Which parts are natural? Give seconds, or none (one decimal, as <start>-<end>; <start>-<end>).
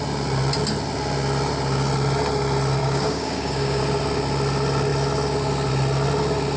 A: 0.0-2.8; 3.8-6.6